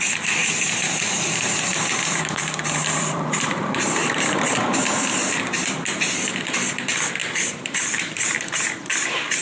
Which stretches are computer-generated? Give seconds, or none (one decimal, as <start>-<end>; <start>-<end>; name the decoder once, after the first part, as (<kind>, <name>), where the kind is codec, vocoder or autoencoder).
0.0-9.4 (vocoder, BigVGAN v2)